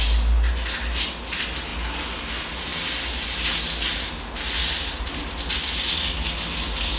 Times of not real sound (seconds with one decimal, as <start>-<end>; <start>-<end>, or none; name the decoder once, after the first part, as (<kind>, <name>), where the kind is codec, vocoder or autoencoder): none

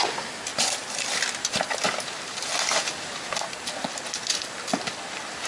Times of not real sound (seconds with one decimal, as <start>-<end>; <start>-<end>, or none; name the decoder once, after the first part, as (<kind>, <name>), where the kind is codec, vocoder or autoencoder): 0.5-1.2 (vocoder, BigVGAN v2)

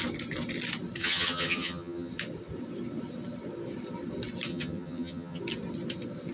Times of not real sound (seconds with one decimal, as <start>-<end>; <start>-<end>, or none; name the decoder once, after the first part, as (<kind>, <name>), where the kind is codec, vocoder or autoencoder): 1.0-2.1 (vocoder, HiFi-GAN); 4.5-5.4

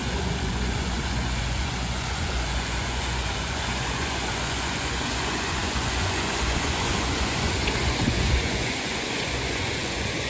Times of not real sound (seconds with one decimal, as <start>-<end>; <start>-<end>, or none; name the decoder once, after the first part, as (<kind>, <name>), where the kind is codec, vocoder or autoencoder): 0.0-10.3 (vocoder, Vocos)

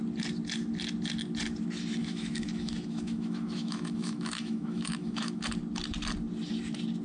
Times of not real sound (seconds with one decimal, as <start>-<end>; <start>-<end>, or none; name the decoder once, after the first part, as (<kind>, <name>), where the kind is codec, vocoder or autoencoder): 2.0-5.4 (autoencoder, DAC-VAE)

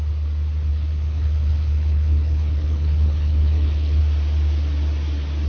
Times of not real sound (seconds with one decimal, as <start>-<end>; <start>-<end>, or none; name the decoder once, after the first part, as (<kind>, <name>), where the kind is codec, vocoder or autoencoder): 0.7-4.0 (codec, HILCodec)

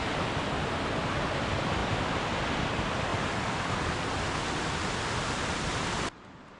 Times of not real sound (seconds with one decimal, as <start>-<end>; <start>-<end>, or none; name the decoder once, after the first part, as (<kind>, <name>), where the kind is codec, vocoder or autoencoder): none

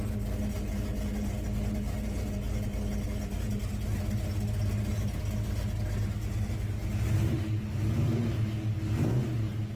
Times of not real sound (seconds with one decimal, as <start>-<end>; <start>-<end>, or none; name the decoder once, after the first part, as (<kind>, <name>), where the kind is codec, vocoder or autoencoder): 6.8-7.4 (vocoder, BigVGAN v2)